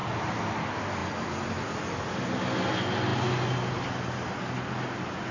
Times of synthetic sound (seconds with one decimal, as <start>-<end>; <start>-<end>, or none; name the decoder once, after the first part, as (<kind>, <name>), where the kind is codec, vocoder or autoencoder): none